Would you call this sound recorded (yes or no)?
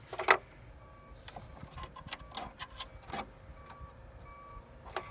yes